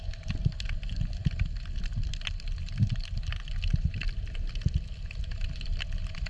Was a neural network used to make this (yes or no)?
no